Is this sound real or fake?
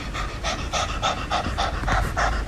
real